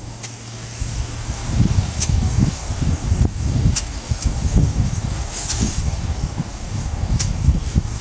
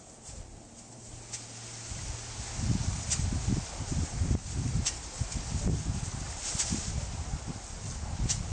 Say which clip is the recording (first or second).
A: second